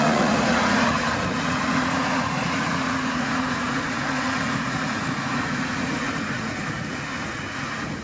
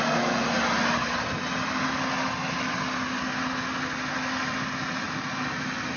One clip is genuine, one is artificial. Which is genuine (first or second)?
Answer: second